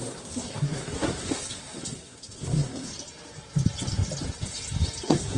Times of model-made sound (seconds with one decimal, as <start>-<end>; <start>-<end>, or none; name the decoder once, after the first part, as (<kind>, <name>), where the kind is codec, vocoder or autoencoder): 0.0-2.9 (codec, SNAC); 5.0-5.4